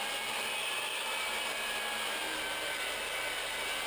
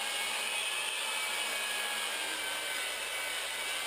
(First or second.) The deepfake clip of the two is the first